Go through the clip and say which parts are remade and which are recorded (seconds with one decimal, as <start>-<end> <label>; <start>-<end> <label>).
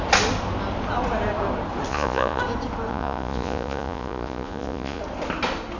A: 0.0-1.9 recorded; 1.9-2.4 remade; 2.4-2.9 recorded; 2.9-5.0 remade; 5.0-5.8 recorded